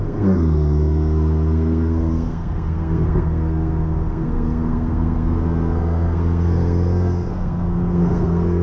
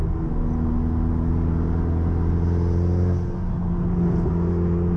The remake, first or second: first